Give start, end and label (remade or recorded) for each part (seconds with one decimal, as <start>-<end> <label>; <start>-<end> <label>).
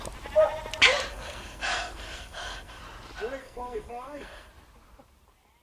0.0-1.1 recorded; 1.1-2.8 remade; 2.8-3.4 recorded; 3.4-4.5 remade; 4.5-5.6 recorded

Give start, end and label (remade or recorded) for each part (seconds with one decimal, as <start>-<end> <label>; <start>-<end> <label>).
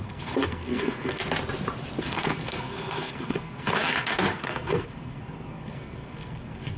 0.0-1.2 remade; 1.2-2.0 recorded; 2.0-6.8 remade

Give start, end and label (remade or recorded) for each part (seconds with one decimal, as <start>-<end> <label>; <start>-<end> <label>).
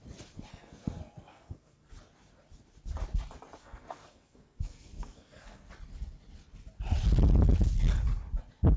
0.0-0.5 recorded; 0.5-1.9 remade; 1.9-3.6 recorded; 3.6-5.7 remade; 5.7-8.8 recorded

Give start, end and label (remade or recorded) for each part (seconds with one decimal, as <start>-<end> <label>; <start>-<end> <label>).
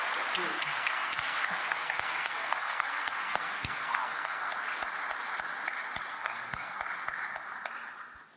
0.0-0.5 recorded; 0.5-4.5 remade; 4.5-6.1 recorded; 6.1-6.8 remade; 6.8-8.4 recorded